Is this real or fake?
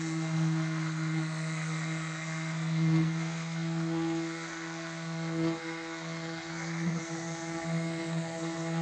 fake